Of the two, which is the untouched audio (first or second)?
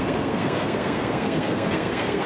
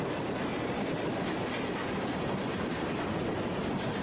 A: second